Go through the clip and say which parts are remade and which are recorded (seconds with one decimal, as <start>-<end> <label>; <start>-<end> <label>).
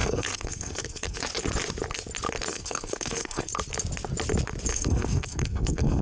0.0-1.2 remade; 1.2-2.5 recorded; 2.5-3.5 remade; 3.5-4.7 recorded; 4.7-6.0 remade